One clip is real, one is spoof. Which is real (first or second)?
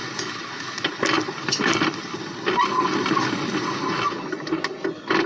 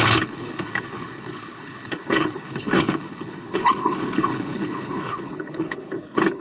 first